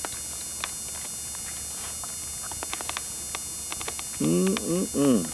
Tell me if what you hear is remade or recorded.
recorded